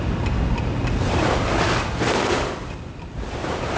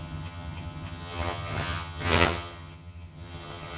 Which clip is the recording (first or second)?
first